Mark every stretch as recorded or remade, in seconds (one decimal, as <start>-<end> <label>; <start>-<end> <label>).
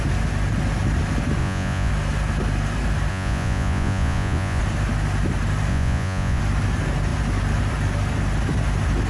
0.0-1.4 recorded; 1.4-1.9 remade; 1.9-3.1 recorded; 3.1-4.6 remade; 4.6-5.7 recorded; 5.7-6.4 remade; 6.4-9.1 recorded